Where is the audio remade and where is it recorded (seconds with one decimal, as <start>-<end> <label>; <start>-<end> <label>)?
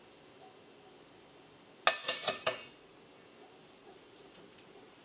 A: 0.0-2.0 recorded; 2.0-3.0 remade; 3.0-3.8 recorded; 3.8-5.0 remade